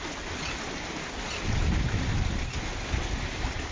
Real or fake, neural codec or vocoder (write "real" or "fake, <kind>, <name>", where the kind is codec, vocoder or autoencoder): real